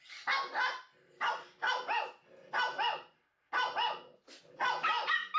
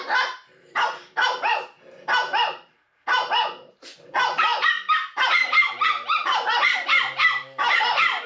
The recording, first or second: first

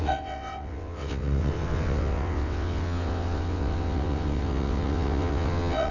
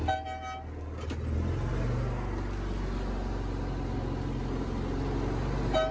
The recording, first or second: second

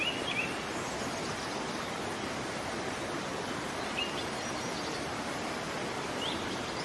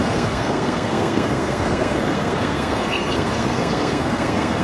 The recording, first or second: first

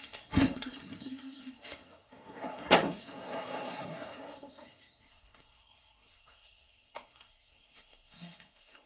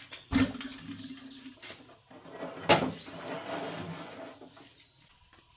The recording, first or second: second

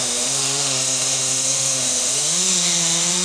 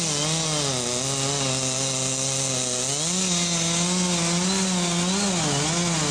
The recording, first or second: second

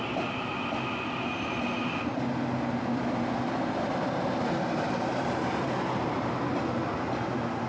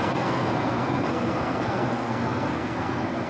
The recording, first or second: first